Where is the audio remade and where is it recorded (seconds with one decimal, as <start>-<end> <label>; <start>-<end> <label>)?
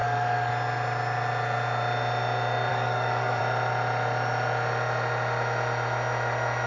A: 0.0-0.5 remade; 0.5-2.7 recorded; 2.7-3.4 remade; 3.4-6.7 recorded